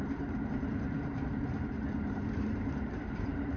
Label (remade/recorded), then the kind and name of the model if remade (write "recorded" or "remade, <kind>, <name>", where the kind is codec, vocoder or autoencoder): remade, vocoder, BigVGAN v2